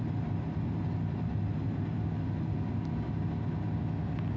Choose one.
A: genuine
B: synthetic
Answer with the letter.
A